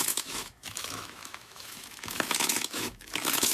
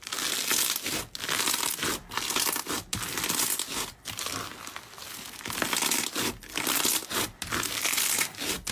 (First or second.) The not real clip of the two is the first